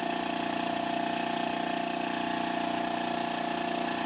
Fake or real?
real